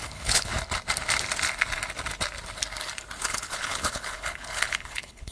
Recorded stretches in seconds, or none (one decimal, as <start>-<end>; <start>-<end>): 0.5-3.2